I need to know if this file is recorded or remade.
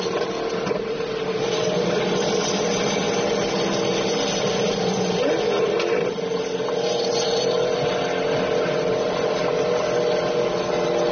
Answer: recorded